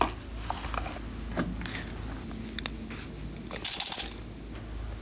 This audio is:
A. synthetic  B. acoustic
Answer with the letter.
B